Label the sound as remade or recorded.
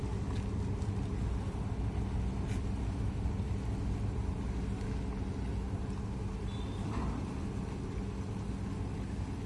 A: recorded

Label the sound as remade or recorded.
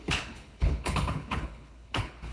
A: remade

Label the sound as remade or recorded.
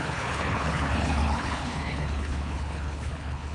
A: remade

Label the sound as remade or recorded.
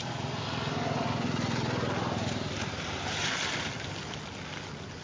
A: recorded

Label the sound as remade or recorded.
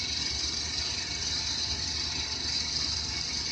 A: recorded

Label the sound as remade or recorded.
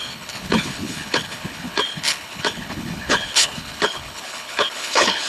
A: remade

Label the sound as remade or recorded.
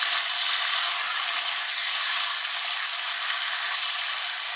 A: recorded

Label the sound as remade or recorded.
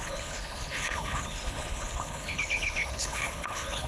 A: remade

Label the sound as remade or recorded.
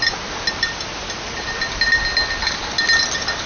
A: recorded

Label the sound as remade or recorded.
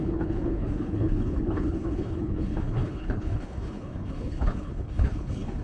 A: remade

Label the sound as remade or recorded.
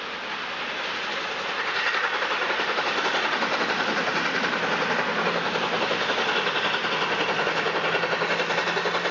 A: recorded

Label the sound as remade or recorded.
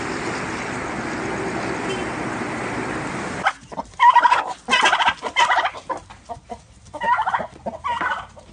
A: recorded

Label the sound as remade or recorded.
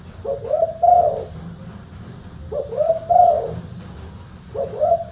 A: recorded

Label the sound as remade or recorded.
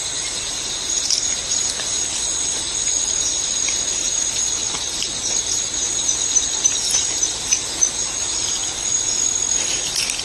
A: recorded